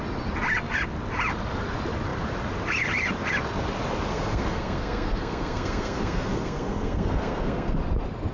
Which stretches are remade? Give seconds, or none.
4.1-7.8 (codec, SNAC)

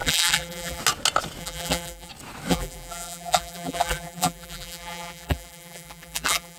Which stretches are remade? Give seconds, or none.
0.0-0.8 (vocoder, BigVGAN v2); 1.4-2.1; 2.5-6.6